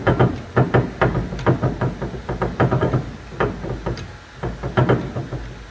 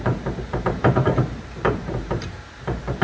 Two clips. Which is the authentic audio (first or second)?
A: first